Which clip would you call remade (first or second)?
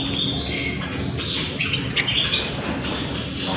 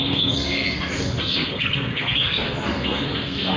second